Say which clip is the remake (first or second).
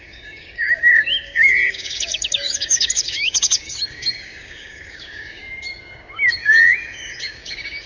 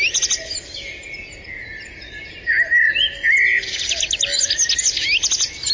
first